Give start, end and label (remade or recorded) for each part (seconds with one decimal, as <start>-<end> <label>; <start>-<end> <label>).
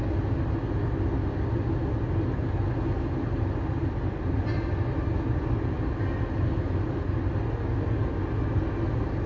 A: 0.0-9.3 recorded